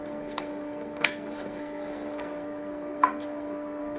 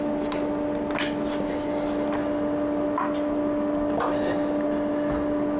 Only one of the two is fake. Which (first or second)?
first